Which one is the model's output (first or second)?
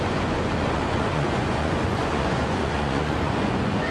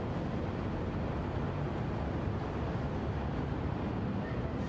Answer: first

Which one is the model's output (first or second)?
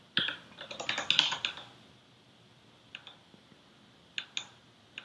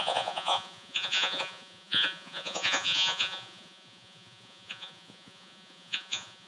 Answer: second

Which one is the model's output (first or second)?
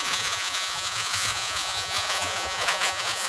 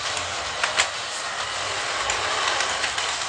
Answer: first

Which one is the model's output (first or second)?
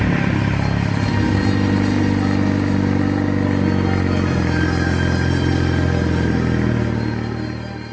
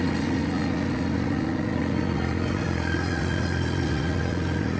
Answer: second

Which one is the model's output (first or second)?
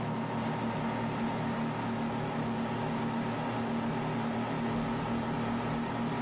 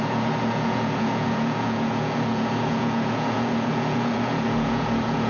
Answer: second